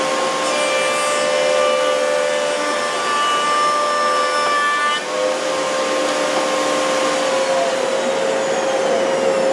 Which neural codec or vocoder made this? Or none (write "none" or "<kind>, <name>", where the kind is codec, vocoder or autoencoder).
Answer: none